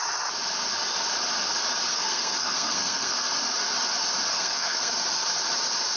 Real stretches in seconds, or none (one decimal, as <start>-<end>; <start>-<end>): 0.0-1.9; 3.2-4.3; 4.9-6.0